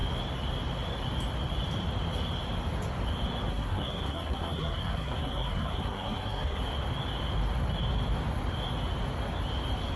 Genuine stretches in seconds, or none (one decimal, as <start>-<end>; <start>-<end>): 0.0-3.5; 6.6-10.0